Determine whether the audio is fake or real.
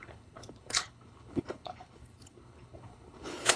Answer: fake